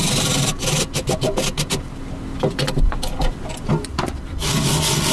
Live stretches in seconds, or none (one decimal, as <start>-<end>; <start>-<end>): 0.0-3.7; 4.4-5.1